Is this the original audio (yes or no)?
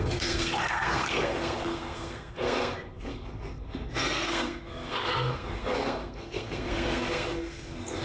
no